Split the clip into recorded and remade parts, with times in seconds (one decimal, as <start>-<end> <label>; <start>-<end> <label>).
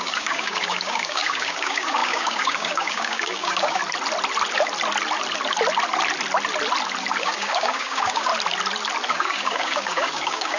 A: 0.0-3.8 remade; 3.8-7.2 recorded; 7.2-8.3 remade; 8.3-9.1 recorded; 9.1-10.6 remade